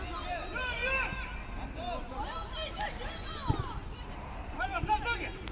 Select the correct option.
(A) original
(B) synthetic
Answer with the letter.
A